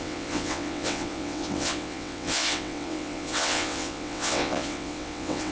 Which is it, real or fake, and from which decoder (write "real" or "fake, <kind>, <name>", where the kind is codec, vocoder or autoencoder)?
fake, vocoder, WaveNeXt